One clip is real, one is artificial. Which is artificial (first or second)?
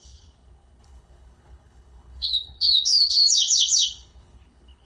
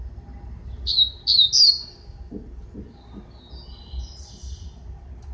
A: first